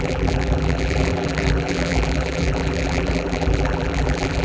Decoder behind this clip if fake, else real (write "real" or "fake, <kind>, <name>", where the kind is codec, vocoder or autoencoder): fake, vocoder, BigVGAN v2